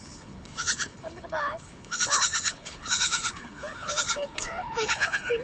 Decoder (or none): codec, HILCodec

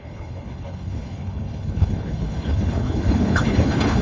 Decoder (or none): codec, HILCodec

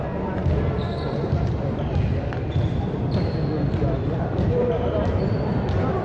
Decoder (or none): none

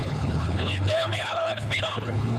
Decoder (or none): codec, HILCodec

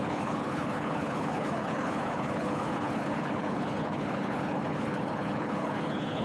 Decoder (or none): codec, HILCodec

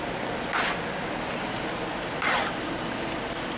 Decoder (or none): none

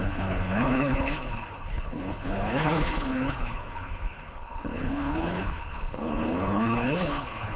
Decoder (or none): codec, HILCodec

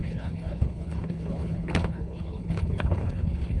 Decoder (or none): codec, HILCodec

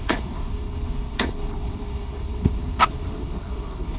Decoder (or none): codec, HILCodec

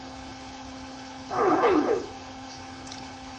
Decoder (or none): codec, HILCodec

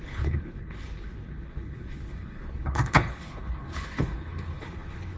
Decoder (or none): codec, HILCodec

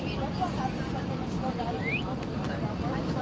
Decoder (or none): none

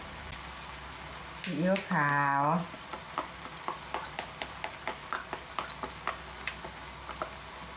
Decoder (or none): none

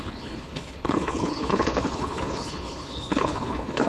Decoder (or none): codec, HILCodec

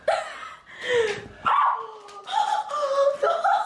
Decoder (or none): none